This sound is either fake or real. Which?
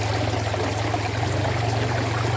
real